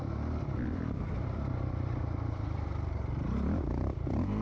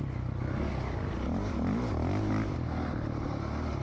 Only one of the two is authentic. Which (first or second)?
second